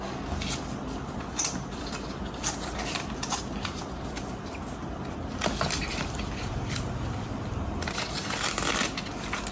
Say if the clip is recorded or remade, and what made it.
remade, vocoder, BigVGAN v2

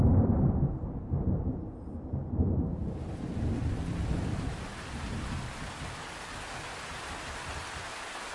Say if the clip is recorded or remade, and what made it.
recorded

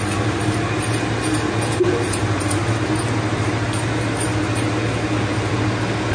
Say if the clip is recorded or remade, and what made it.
recorded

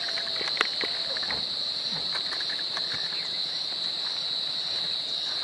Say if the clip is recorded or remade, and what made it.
remade, vocoder, BigVGAN v2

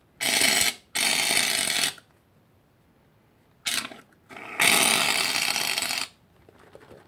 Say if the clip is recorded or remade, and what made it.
recorded